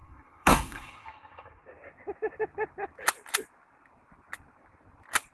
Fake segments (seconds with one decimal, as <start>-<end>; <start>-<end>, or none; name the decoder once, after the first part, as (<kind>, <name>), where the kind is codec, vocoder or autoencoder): 0.0-1.6 (codec, SNAC)